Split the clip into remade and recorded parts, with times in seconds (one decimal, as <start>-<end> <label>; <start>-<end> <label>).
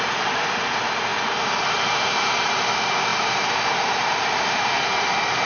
0.0-5.5 remade